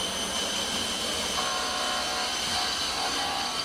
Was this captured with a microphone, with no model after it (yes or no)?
no